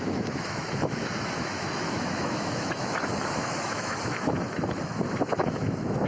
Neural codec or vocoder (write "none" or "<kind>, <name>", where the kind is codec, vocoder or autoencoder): autoencoder, DAC-VAE